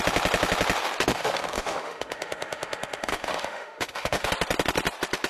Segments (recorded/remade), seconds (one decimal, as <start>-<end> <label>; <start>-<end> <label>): 0.0-1.1 recorded; 1.1-4.3 remade; 4.3-5.3 recorded